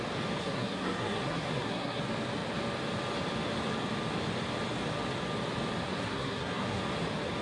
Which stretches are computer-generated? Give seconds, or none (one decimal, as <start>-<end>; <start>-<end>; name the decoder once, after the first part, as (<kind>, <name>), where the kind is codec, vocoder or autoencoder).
0.4-2.0 (codec, SNAC); 5.9-6.8